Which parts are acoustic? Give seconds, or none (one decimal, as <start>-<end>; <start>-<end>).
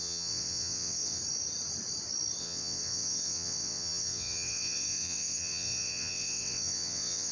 1.2-2.4